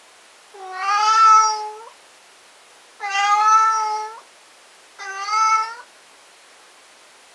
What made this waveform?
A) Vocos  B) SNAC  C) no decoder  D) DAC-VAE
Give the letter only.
C